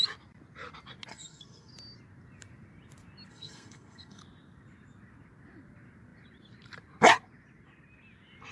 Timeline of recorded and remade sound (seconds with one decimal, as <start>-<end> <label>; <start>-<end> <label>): 0.0-1.1 recorded; 1.1-1.7 remade; 1.7-3.3 recorded; 3.3-4.2 remade; 4.2-8.5 recorded